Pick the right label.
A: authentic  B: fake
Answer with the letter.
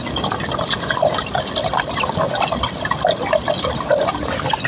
B